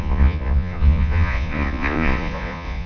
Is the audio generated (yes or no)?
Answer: yes